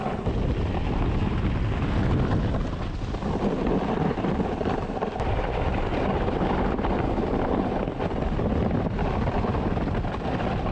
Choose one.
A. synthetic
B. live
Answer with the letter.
B